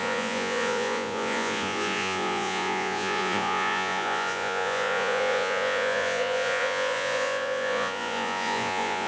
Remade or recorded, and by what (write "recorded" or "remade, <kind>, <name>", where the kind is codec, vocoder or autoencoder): remade, vocoder, Vocos